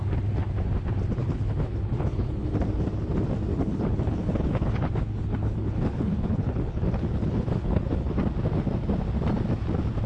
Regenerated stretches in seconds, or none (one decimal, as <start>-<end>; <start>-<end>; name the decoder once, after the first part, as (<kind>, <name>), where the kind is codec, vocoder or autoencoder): 1.2-2.5 (codec, HILCodec); 3.5-8.2